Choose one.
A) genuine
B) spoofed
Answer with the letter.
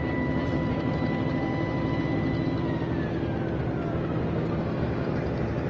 A